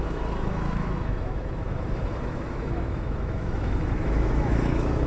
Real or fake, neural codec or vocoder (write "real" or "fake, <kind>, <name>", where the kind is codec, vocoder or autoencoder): fake, autoencoder, DAC-VAE